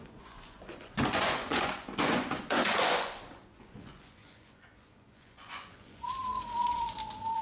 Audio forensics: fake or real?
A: fake